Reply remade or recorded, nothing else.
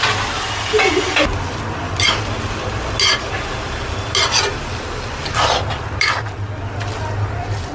recorded